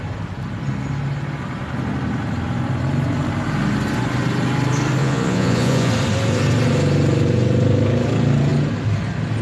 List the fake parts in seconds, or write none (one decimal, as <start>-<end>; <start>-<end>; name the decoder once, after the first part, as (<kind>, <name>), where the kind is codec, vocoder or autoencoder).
5.0-5.9 (vocoder, Vocos)